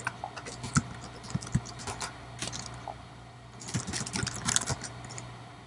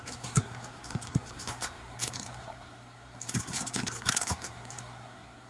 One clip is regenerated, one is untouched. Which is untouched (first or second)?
first